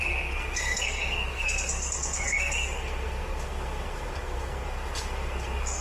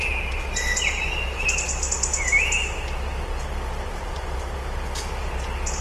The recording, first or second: second